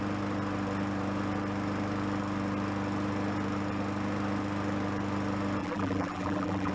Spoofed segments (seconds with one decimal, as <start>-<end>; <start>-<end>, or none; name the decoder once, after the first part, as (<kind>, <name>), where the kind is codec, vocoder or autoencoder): 5.6-6.7 (vocoder, BigVGAN v2)